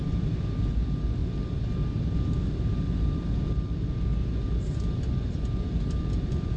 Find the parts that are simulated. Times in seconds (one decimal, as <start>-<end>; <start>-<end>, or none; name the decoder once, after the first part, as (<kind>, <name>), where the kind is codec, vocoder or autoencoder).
none